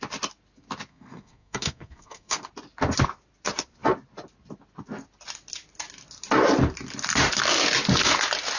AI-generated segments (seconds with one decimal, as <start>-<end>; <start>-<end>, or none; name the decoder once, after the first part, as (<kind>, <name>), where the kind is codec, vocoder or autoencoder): 0.9-2.5 (codec, SNAC)